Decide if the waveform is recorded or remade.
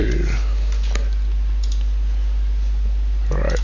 recorded